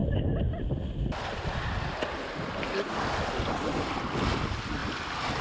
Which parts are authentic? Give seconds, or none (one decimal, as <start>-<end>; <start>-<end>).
0.0-5.4